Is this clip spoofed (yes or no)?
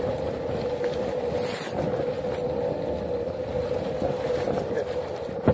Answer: no